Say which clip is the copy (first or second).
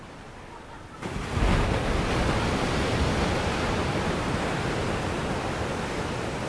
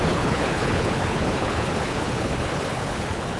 second